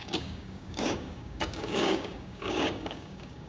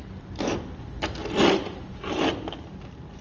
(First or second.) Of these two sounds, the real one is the second